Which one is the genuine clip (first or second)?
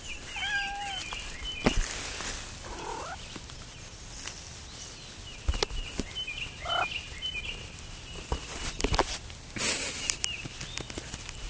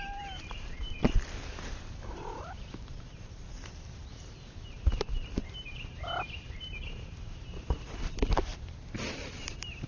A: first